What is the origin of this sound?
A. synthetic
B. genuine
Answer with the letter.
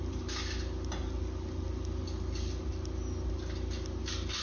B